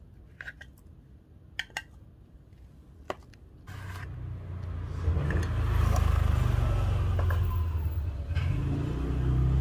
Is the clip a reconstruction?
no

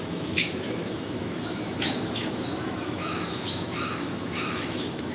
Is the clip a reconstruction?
yes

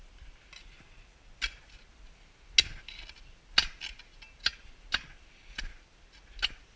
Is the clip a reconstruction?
no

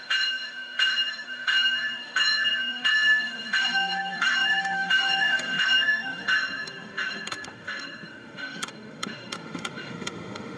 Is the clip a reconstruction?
yes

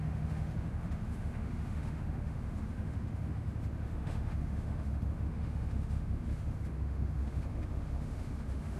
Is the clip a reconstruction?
yes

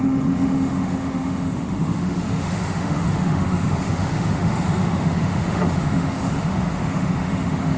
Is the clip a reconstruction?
yes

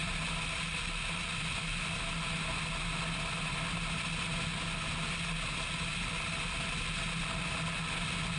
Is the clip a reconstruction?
no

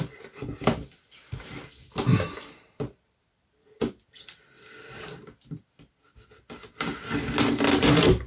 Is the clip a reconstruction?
no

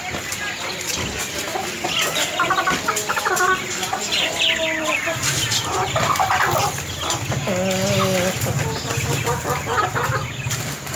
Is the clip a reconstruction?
no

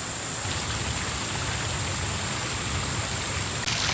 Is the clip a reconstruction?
no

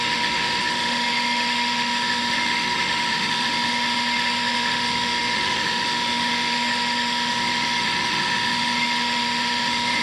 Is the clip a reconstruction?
yes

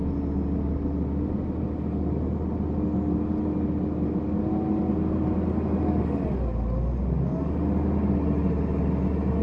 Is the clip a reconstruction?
no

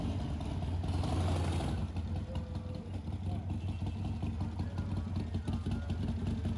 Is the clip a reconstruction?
no